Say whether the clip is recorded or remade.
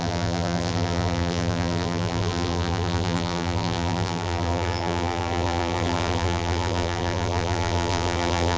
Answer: remade